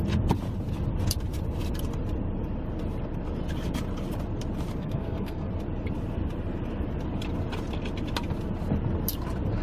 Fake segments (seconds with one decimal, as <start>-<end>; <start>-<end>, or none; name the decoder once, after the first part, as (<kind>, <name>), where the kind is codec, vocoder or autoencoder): 4.8-5.5 (codec, SNAC)